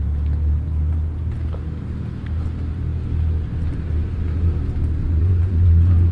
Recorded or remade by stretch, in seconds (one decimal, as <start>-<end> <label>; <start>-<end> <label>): 0.0-5.0 recorded; 5.0-6.1 remade